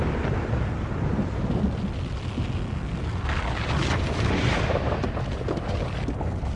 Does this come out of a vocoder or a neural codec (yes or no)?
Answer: no